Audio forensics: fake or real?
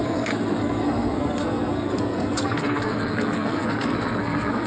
fake